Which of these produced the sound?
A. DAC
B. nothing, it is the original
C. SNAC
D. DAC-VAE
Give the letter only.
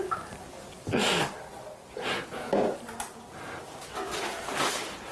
B